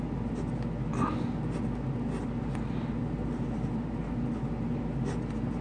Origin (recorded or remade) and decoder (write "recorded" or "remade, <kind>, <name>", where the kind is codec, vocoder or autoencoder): recorded